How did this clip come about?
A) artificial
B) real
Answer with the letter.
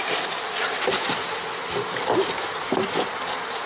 B